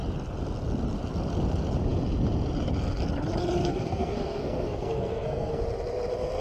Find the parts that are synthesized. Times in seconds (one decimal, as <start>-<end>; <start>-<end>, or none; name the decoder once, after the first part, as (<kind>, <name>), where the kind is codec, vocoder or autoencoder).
3.6-5.6 (codec, SNAC)